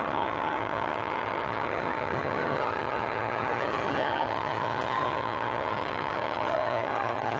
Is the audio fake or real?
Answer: fake